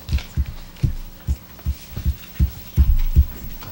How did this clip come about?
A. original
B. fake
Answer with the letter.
A